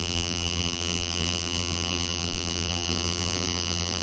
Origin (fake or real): fake